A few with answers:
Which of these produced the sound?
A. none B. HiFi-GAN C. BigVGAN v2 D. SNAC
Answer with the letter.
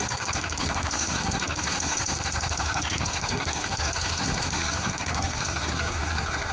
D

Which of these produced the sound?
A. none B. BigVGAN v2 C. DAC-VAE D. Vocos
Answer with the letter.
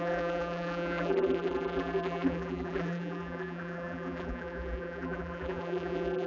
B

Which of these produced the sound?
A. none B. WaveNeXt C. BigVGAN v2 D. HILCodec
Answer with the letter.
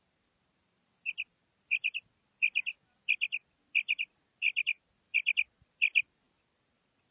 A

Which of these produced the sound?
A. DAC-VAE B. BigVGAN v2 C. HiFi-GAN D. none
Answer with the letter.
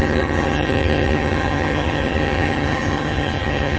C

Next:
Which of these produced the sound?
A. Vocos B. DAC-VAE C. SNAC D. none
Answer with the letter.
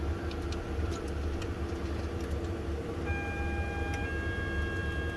D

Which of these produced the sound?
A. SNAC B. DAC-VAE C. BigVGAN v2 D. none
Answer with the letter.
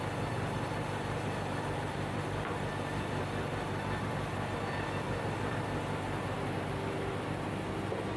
D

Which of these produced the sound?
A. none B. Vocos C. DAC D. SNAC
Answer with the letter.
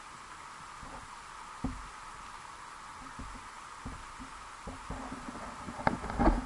A